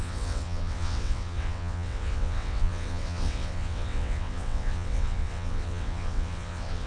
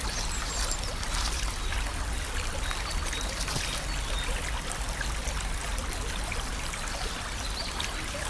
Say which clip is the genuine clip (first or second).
second